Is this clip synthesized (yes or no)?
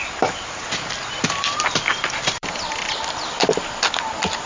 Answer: yes